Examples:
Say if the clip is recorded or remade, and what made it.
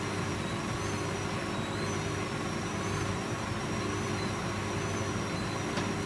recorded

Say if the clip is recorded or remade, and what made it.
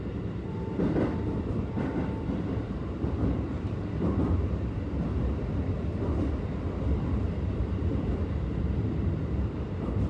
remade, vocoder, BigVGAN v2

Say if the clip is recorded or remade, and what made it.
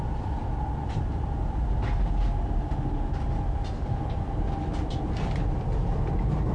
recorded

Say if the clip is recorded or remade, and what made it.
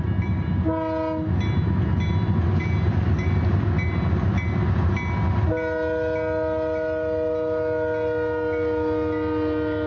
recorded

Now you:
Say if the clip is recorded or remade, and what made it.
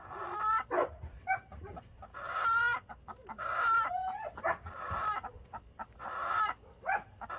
recorded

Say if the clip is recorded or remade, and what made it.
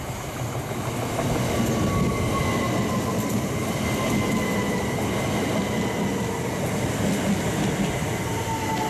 recorded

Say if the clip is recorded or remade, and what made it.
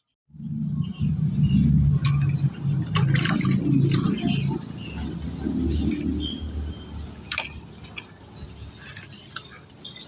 recorded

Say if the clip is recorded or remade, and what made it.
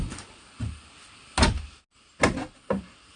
recorded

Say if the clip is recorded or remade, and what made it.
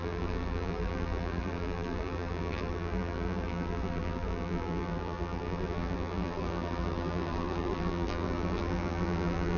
remade, vocoder, BigVGAN v2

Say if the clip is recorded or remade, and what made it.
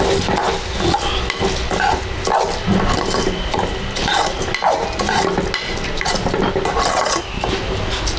recorded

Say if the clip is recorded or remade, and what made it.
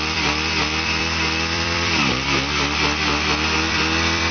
remade, vocoder, BigVGAN v2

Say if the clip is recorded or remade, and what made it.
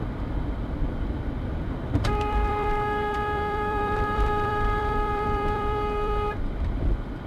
remade, vocoder, BigVGAN v2